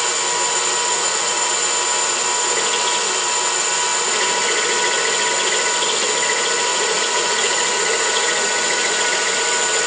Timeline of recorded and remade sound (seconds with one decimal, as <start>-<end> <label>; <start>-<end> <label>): 0.0-0.9 recorded; 0.9-1.5 remade; 1.5-6.7 recorded; 6.7-9.4 remade; 9.4-9.9 recorded